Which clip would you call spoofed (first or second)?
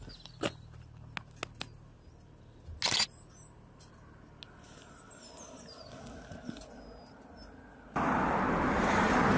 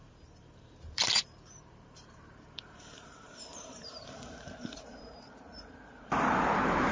second